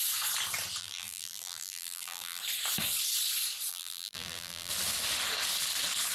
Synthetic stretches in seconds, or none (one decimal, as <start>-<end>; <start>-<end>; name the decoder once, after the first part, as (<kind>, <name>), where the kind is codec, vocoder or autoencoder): 0.8-2.4 (vocoder, BigVGAN v2); 3.7-4.7